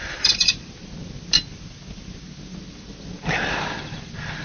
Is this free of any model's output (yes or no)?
yes